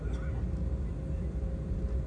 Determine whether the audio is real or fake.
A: real